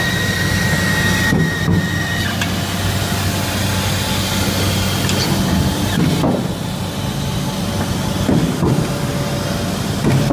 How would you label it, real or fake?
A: real